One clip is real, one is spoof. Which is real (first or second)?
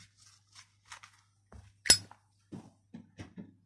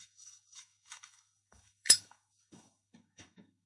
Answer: first